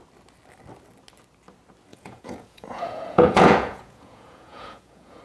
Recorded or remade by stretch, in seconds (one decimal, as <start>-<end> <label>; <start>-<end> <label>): 0.0-1.9 recorded; 1.9-5.2 remade